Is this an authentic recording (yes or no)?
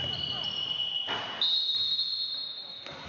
yes